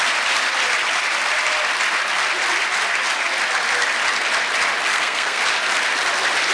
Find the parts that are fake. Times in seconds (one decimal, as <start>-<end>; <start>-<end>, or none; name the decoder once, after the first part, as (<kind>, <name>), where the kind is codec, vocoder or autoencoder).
4.9-5.4 (codec, SNAC)